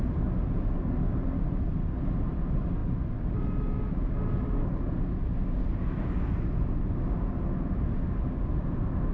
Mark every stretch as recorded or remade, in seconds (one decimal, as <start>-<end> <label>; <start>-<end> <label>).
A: 0.0-9.1 recorded